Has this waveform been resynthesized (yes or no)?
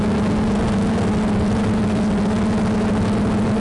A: no